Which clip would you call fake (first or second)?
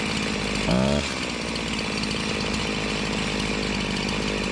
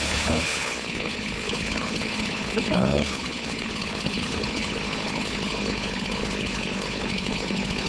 second